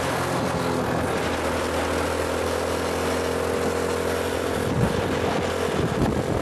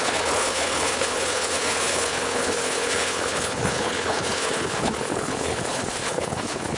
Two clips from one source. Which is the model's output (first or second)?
second